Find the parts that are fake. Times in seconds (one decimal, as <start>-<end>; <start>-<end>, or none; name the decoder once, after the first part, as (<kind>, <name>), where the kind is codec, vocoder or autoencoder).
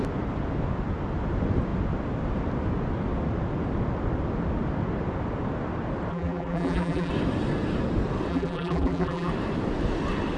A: 6.1-7.1 (vocoder, BigVGAN v2); 8.3-9.3